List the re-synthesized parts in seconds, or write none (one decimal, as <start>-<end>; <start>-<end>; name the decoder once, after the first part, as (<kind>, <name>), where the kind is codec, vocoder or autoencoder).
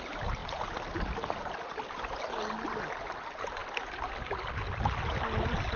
none